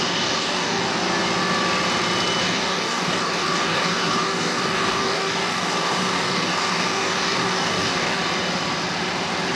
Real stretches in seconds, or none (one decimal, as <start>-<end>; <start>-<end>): 0.8-2.4; 8.2-9.6